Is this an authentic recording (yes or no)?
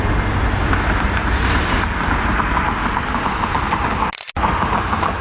yes